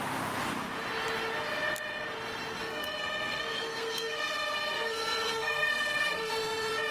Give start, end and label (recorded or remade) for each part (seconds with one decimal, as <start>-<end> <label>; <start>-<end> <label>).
0.0-2.6 recorded; 2.6-6.3 remade; 6.3-6.9 recorded